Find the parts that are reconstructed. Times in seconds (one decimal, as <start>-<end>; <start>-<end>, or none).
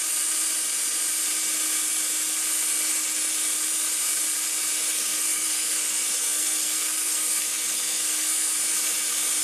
4.9-8.6